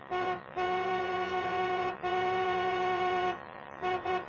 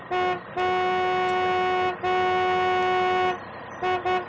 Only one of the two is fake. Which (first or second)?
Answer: first